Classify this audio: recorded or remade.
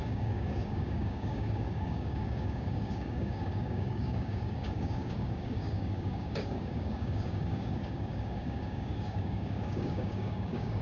remade